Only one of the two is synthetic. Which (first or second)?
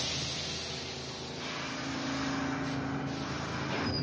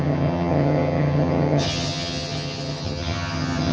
second